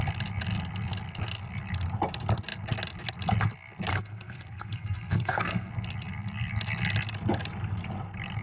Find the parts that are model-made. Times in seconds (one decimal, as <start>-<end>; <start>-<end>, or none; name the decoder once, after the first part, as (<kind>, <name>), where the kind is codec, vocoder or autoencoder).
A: 3.9-5.7 (codec, SNAC)